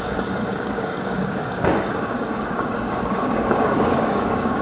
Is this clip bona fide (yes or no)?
no